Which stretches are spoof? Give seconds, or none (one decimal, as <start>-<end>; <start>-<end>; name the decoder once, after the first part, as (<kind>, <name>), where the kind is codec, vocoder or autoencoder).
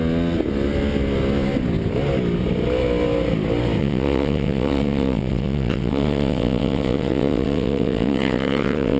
3.8-9.0 (vocoder, WaveNeXt)